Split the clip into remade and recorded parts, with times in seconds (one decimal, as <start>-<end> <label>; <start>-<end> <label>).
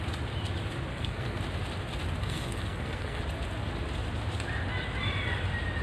0.0-0.9 recorded; 0.9-1.4 remade; 1.4-2.2 recorded; 2.2-3.2 remade; 3.2-5.8 recorded